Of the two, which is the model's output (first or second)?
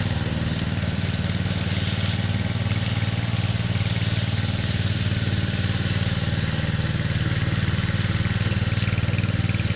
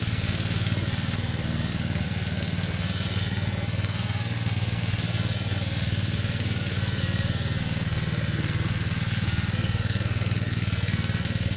second